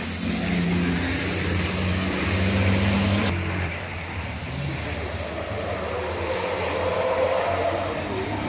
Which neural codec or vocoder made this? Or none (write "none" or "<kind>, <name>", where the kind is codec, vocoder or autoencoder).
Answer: none